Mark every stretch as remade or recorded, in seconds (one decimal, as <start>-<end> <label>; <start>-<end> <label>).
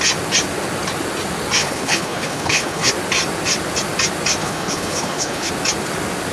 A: 0.0-1.6 recorded; 1.6-2.9 remade; 2.9-4.4 recorded; 4.4-5.5 remade; 5.5-6.3 recorded